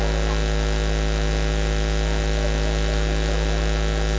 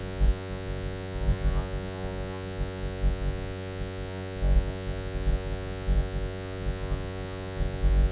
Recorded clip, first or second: first